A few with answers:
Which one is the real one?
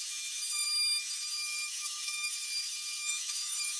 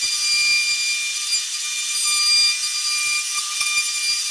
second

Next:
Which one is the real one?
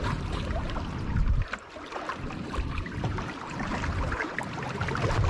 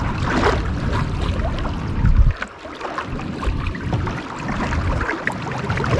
second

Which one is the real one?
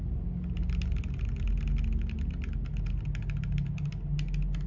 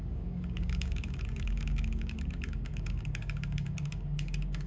first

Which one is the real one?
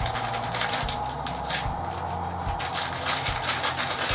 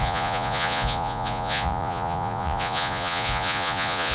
first